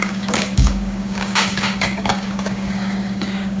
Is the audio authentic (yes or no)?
no